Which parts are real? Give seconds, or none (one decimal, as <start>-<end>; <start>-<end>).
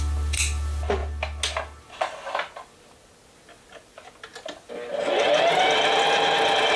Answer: 0.0-6.8